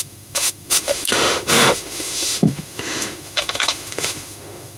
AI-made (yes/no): yes